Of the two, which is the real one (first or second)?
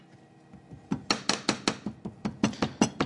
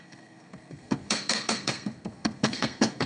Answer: first